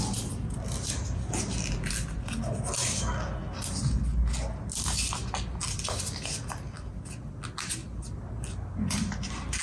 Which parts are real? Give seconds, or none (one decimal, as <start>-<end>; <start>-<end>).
0.0-9.6